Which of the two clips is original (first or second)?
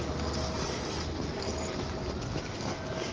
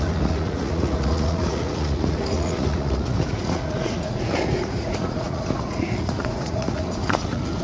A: first